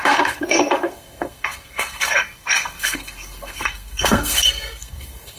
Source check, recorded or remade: remade